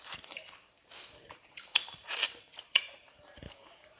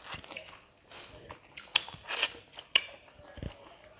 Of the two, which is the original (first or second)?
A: second